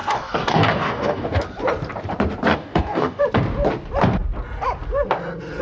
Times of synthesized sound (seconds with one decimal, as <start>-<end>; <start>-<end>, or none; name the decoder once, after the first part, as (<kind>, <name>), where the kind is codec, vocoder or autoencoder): 0.0-1.4 (codec, DAC); 2.5-3.2

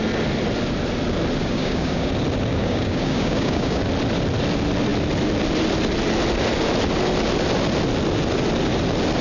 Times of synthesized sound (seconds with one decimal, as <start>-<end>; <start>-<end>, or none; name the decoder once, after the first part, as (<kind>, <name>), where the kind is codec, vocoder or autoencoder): 1.4-2.1 (codec, DAC); 2.5-3.8

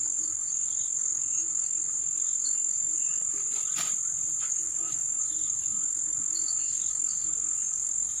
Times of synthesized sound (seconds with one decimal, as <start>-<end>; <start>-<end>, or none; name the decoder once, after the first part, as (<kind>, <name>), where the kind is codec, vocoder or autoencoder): 0.0-3.4 (codec, DAC); 4.5-8.2

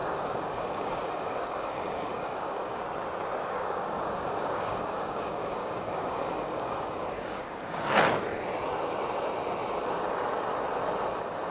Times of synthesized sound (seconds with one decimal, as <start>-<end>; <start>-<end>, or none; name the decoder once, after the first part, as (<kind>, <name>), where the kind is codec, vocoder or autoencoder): 0.0-2.8 (codec, DAC); 3.4-7.9

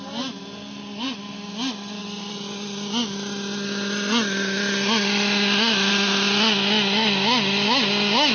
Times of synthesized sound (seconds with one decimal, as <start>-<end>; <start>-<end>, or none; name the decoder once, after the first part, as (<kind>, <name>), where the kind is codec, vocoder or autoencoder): none

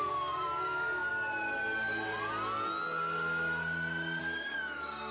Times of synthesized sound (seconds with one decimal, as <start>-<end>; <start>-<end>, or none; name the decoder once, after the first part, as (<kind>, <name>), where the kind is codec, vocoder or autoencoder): 0.0-1.1 (codec, DAC); 4.2-5.1